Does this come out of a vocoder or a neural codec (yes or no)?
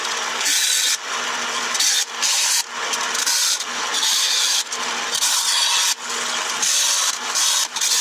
no